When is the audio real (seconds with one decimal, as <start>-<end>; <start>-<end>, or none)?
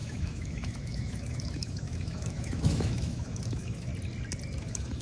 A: 3.9-4.6